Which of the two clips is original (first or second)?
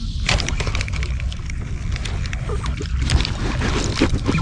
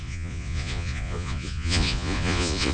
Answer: first